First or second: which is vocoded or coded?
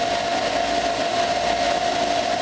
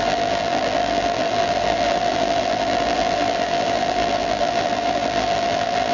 second